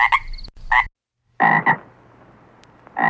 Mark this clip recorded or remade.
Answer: recorded